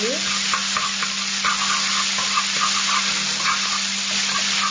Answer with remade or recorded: recorded